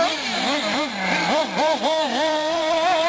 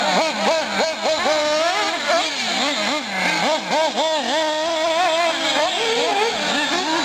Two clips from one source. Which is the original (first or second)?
second